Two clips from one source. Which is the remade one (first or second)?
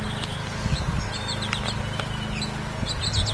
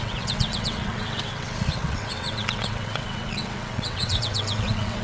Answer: second